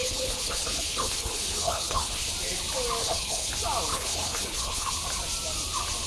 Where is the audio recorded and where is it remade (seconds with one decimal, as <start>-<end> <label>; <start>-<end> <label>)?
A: 0.0-2.3 remade; 2.3-3.0 recorded; 3.0-3.5 remade; 3.5-3.9 recorded; 3.9-4.9 remade; 4.9-6.1 recorded